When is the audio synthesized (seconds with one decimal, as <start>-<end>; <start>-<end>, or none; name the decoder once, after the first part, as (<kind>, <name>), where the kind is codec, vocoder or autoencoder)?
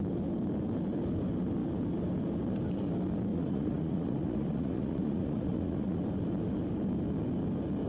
3.3-6.0 (vocoder, Vocos)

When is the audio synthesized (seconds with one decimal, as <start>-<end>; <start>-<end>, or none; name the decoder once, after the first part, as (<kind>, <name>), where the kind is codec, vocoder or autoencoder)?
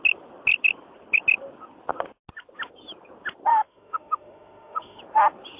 3.5-5.0 (autoencoder, DAC-VAE)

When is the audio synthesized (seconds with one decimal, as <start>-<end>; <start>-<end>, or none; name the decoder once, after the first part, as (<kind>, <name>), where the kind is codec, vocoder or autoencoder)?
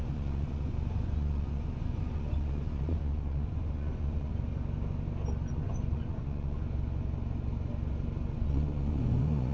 0.0-4.3 (vocoder, Vocos); 5.5-6.6; 8.3-9.5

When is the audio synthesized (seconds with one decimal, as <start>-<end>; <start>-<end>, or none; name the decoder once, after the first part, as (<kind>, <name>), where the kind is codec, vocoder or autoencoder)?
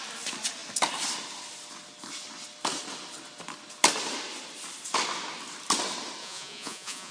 6.2-7.1 (vocoder, Vocos)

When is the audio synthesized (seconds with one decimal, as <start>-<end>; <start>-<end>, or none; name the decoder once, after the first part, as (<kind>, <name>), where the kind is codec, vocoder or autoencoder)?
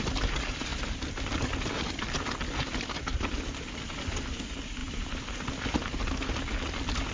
0.7-2.3 (vocoder, BigVGAN v2); 3.1-3.9; 4.8-6.0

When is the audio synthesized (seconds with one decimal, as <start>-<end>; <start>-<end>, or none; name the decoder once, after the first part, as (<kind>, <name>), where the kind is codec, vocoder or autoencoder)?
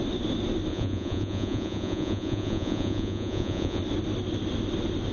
0.7-3.8 (vocoder, Vocos)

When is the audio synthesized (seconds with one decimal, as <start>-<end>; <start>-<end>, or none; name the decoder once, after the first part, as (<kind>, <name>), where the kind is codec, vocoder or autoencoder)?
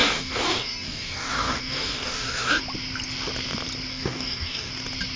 0.0-2.6 (codec, DAC); 3.9-4.7